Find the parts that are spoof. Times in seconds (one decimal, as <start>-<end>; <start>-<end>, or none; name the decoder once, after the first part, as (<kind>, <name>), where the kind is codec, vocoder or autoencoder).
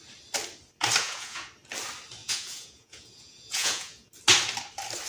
1.0-1.5 (vocoder, Vocos); 2.2-4.1